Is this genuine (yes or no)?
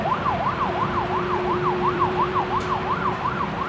no